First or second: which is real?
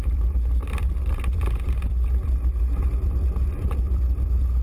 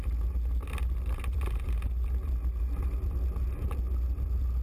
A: second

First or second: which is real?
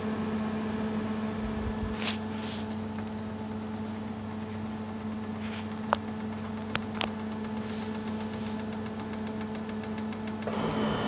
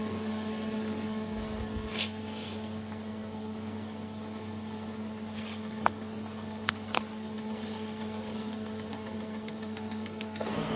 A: first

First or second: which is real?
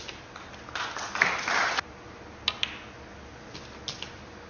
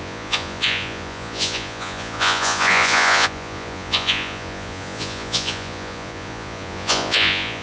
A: first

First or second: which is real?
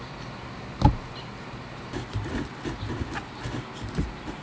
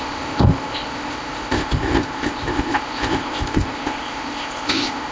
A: first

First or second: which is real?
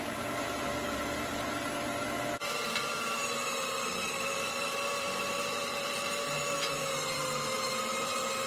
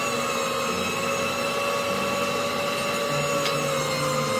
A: second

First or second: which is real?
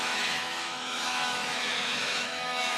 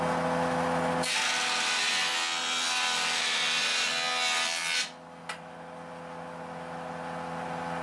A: second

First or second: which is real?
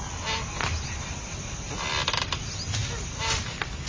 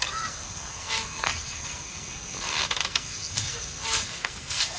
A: first